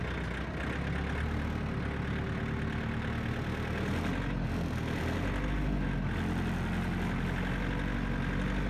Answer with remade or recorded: recorded